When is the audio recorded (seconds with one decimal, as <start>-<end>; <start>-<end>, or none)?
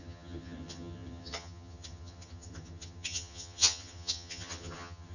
none